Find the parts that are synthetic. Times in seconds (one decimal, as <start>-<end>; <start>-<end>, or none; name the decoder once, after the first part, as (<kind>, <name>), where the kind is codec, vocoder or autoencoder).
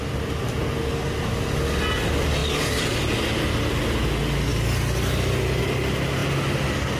none